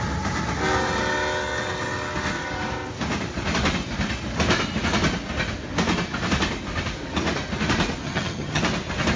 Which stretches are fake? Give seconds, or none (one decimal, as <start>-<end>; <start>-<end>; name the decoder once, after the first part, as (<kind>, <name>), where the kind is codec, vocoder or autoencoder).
8.0-8.6 (vocoder, HiFi-GAN)